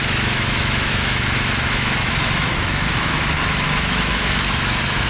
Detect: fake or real fake